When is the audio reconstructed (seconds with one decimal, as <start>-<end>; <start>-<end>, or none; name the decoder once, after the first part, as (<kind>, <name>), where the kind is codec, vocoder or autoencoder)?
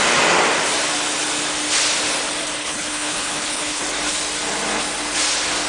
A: 2.6-3.8 (codec, HILCodec)